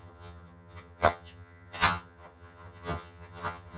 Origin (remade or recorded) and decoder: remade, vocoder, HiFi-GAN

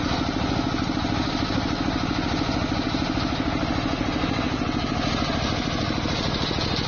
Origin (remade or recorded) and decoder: recorded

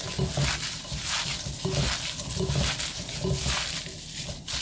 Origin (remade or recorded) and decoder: recorded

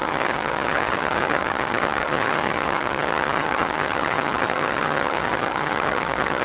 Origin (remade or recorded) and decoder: remade, vocoder, HiFi-GAN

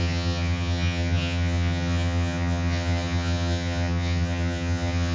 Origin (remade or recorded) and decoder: remade, vocoder, HiFi-GAN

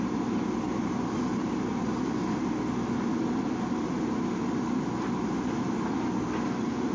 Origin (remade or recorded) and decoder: recorded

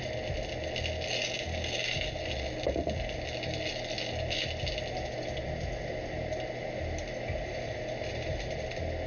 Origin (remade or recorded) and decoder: recorded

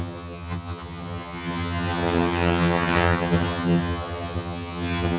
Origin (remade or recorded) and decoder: remade, vocoder, HiFi-GAN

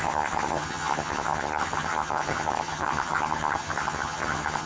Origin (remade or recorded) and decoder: remade, vocoder, HiFi-GAN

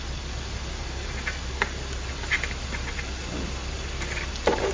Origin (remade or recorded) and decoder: recorded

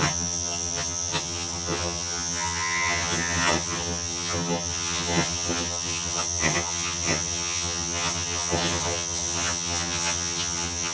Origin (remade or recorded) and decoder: remade, vocoder, HiFi-GAN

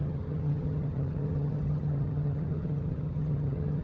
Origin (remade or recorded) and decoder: remade, vocoder, HiFi-GAN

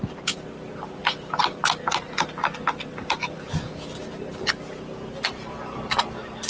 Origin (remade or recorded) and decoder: recorded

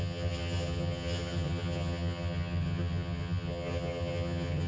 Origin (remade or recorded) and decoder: remade, vocoder, HiFi-GAN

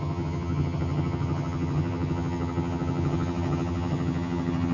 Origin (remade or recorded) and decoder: remade, vocoder, HiFi-GAN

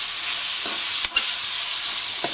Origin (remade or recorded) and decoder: recorded